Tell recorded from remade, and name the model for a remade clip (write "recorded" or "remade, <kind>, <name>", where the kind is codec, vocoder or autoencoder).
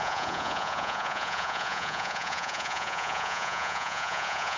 remade, vocoder, Vocos